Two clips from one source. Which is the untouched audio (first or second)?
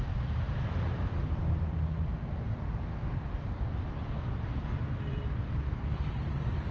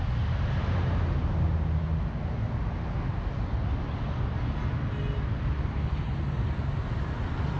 second